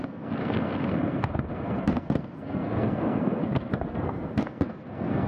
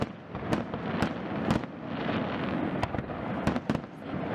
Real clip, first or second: second